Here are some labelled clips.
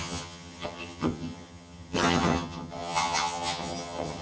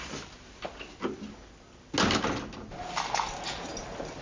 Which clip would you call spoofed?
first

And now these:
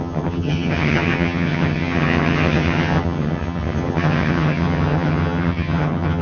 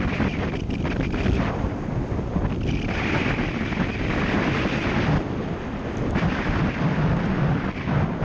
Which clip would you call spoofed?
first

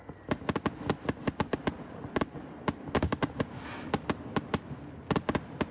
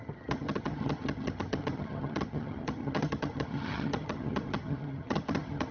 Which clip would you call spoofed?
second